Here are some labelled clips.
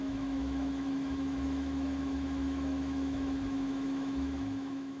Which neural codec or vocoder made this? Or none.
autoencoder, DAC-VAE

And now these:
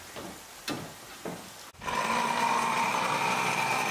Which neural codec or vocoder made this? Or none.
none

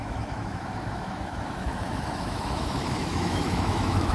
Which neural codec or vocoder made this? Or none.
autoencoder, DAC-VAE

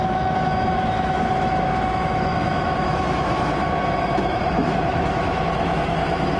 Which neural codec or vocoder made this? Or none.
autoencoder, DAC-VAE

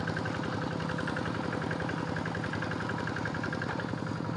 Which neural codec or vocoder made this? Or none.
none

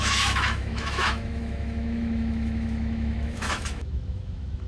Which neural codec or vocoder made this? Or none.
autoencoder, DAC-VAE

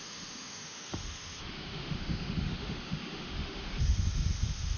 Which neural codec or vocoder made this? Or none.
autoencoder, DAC-VAE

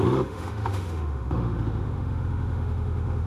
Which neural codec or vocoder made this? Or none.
autoencoder, DAC-VAE